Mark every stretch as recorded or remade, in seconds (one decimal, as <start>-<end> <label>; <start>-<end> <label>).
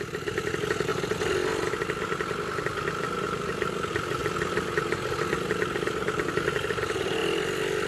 0.0-0.9 remade; 0.9-2.6 recorded; 2.6-4.2 remade; 4.2-4.8 recorded; 4.8-7.9 remade